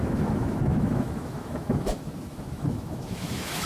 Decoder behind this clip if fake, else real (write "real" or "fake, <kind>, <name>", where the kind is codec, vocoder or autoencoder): fake, autoencoder, DAC-VAE